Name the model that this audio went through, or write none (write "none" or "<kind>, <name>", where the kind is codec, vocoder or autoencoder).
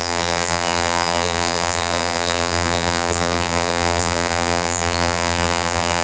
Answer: vocoder, BigVGAN v2